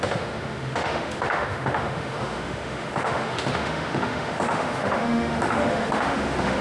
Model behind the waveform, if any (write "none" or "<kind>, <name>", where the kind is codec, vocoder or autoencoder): autoencoder, DAC-VAE